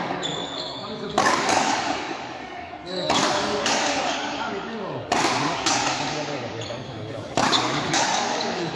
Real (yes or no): no